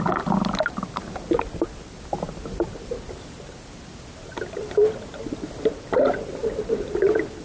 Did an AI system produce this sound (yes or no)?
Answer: no